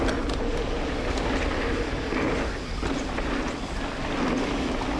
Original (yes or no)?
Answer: yes